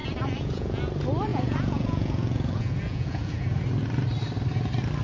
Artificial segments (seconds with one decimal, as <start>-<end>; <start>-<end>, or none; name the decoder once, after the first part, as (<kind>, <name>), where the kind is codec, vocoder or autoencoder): 0.0-0.8 (vocoder, Vocos); 1.3-3.6